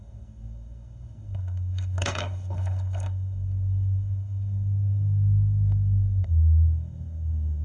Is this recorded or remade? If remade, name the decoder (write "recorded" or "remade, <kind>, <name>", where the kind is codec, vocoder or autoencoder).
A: remade, codec, SNAC